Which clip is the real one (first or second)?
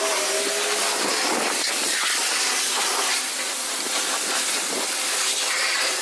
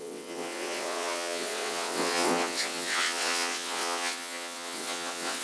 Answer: first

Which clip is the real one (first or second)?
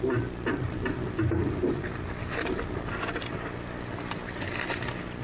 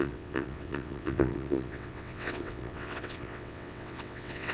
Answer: first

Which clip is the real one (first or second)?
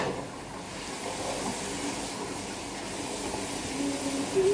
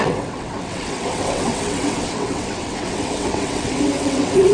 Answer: first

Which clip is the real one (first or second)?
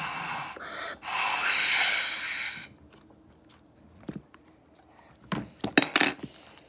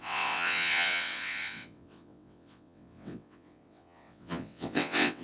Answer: first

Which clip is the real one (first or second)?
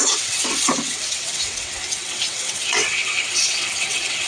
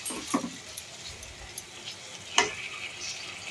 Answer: second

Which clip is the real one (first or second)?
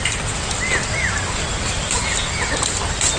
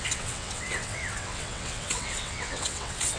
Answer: first